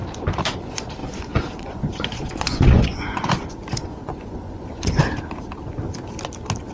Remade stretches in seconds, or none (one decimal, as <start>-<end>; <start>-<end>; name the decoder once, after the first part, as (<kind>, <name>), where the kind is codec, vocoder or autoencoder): 1.0-5.0 (vocoder, Vocos)